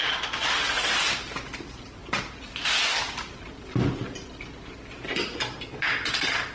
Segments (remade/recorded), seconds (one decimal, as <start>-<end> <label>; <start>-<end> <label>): 0.0-2.0 recorded; 2.0-3.0 remade; 3.0-6.5 recorded